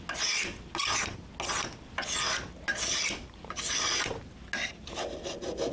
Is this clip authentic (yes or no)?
yes